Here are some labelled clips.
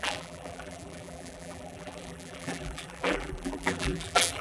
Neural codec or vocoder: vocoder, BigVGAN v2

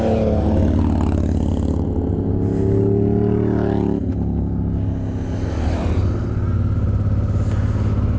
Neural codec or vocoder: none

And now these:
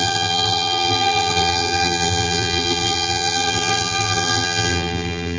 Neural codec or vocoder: vocoder, BigVGAN v2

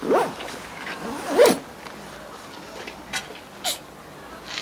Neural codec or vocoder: none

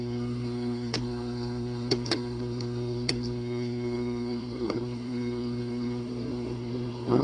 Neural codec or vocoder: codec, SNAC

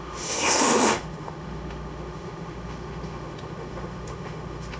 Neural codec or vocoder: autoencoder, DAC-VAE